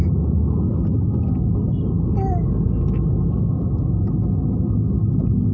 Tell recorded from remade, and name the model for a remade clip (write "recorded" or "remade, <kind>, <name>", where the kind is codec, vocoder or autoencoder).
recorded